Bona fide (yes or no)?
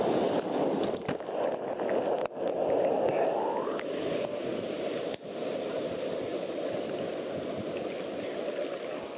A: yes